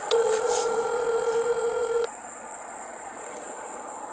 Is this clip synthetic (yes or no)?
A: yes